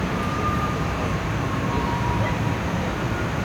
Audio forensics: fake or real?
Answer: fake